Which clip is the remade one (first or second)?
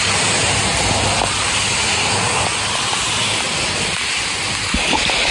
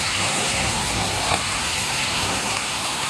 second